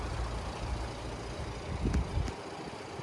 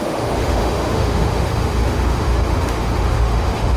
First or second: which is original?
first